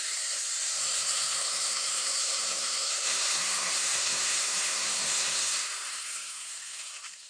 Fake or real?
fake